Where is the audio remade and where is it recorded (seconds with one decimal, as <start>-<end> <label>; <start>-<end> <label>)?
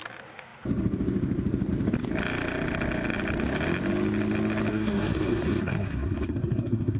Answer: 0.0-4.7 recorded; 4.7-7.0 remade